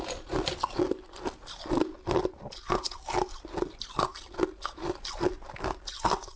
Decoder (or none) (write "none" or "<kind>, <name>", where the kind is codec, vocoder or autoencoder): none